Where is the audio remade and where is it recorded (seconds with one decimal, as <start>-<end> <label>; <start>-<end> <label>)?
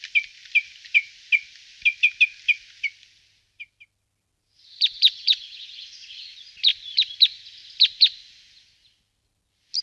0.0-0.4 recorded; 0.4-1.1 remade; 1.1-9.8 recorded